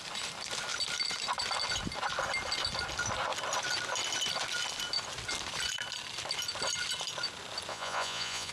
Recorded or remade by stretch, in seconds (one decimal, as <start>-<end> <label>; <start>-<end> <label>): 0.0-7.7 recorded; 7.7-8.5 remade